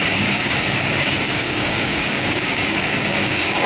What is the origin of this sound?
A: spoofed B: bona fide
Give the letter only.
A